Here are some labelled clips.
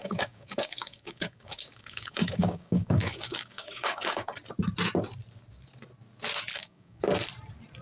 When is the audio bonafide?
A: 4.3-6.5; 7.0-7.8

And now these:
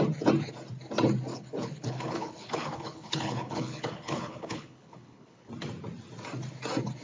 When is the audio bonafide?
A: 0.0-1.3; 5.5-7.0

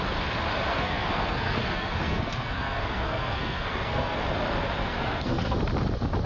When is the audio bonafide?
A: 0.0-0.7; 4.2-4.8; 5.6-6.3